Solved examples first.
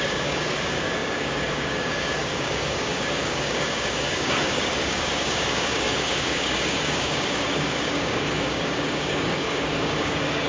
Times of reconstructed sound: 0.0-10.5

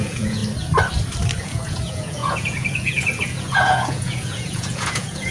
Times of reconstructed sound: 0.0-0.4; 1.4-5.3

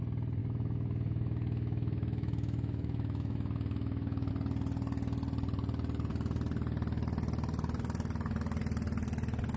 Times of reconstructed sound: 0.4-4.3

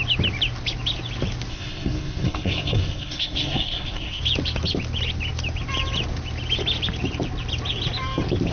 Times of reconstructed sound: 1.5-4.2

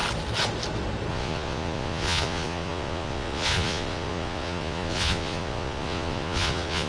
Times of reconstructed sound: 1.1-6.9

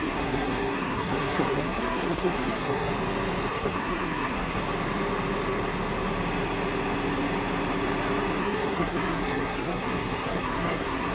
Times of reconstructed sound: 0.0-2.9; 3.5-4.6; 8.4-11.1